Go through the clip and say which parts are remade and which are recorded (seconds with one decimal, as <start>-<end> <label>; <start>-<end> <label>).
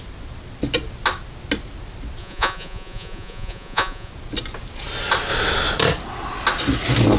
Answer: 0.0-2.2 recorded; 2.2-4.1 remade; 4.1-7.2 recorded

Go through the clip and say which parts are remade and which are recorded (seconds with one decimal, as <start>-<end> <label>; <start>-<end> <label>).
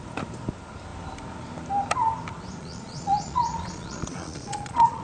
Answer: 0.0-2.6 recorded; 2.6-5.0 remade